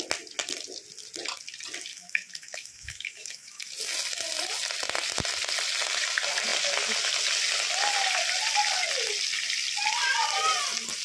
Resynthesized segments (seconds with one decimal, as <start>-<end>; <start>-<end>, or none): 1.9-3.7

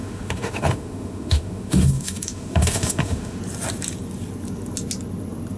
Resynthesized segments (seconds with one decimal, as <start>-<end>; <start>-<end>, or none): 0.0-3.4

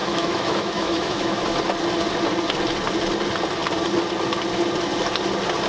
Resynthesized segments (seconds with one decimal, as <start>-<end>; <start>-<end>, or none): 0.0-1.4

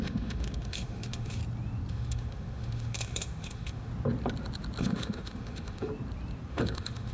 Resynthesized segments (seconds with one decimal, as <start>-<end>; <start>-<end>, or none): 0.0-1.4; 1.9-3.9; 4.8-5.9; 6.5-7.1